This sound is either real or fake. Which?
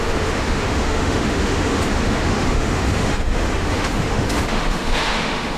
fake